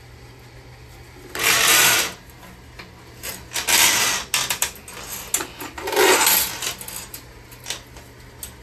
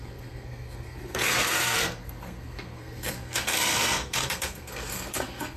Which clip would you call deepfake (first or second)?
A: second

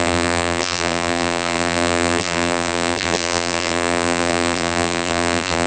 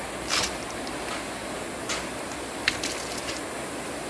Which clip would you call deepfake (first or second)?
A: first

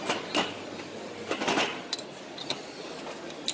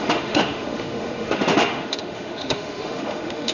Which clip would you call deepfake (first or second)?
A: second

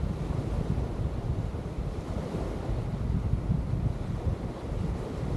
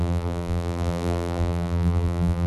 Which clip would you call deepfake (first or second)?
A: second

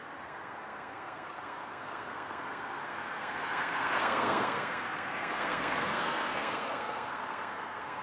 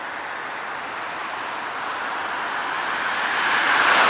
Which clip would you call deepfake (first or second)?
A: first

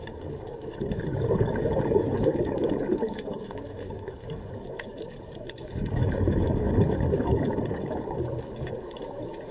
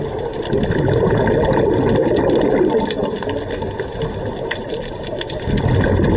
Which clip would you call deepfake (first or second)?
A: first